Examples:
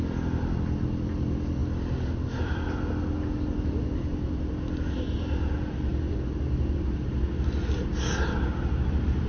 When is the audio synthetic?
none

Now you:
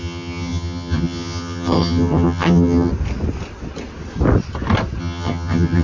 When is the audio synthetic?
0.0-2.9; 5.0-5.8